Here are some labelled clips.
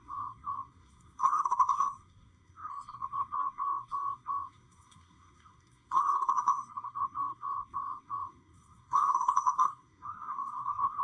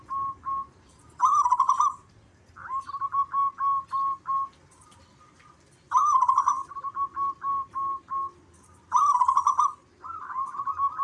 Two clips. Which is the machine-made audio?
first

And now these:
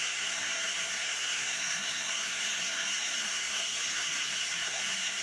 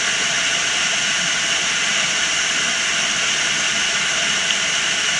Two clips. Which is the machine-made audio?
first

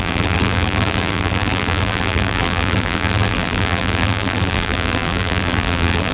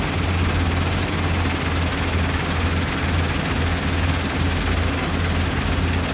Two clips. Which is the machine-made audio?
first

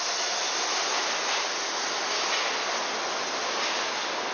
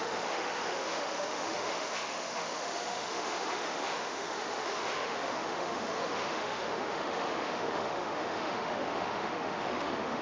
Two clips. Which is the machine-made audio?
second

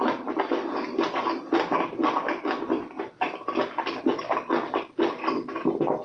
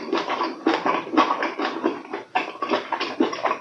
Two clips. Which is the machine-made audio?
second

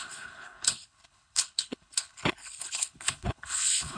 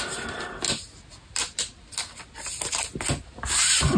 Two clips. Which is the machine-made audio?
first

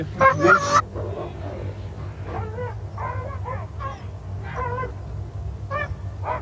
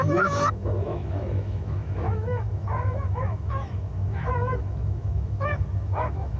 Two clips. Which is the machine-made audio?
second